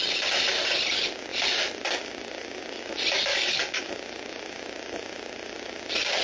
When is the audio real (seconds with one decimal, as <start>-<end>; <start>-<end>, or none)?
0.0-3.3; 3.8-6.2